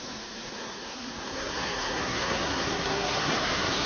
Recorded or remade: remade